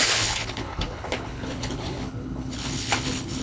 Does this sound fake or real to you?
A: fake